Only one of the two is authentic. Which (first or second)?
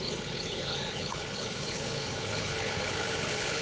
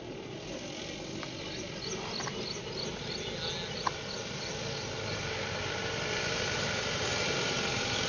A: second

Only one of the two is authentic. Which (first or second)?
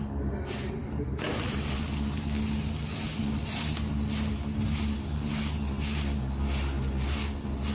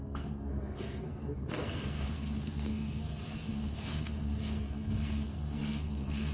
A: first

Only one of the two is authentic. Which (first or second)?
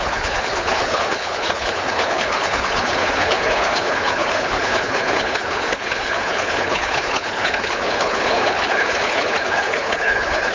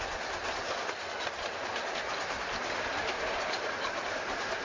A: second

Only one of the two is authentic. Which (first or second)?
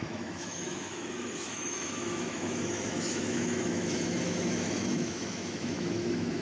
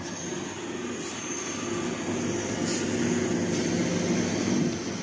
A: second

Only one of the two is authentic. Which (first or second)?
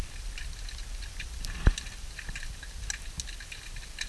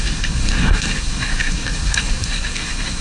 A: first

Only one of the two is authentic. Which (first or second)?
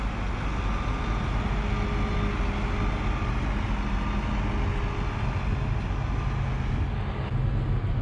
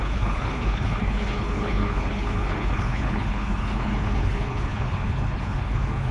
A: first